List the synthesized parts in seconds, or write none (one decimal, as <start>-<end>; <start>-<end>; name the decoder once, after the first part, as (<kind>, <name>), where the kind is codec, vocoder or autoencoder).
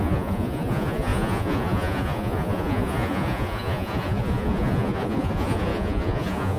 0.0-6.6 (vocoder, Vocos)